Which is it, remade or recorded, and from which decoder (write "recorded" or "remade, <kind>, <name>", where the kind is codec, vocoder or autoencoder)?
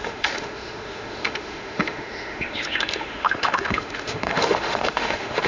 remade, autoencoder, DAC-VAE